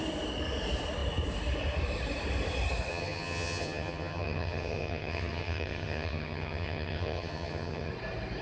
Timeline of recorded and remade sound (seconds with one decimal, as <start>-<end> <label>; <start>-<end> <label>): 0.0-2.9 recorded; 2.9-7.9 remade; 7.9-8.4 recorded